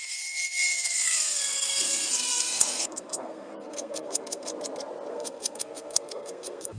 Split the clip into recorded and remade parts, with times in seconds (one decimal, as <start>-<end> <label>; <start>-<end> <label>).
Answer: 0.0-4.5 remade; 4.5-5.1 recorded; 5.1-6.8 remade